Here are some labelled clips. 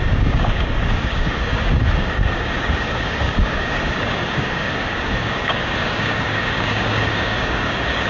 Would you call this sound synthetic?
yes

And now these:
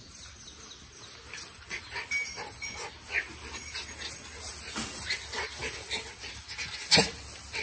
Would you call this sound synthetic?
no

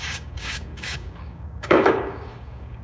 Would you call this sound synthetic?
yes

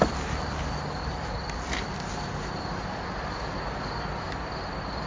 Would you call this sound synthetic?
no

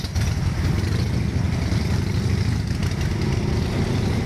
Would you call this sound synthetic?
no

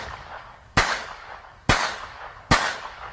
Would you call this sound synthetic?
yes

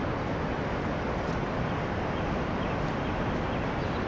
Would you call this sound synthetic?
no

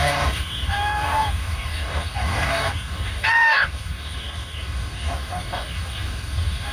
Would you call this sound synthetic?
yes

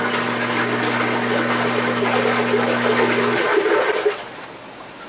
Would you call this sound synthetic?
no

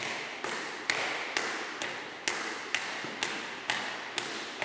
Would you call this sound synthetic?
no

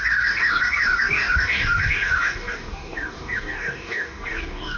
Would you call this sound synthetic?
yes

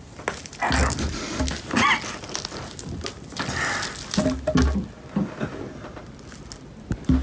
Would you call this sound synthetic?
no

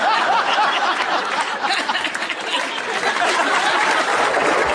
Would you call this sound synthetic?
no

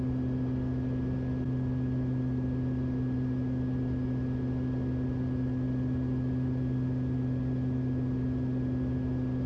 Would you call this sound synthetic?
no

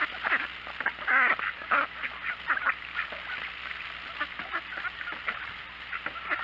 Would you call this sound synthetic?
no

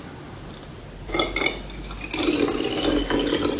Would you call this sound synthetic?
no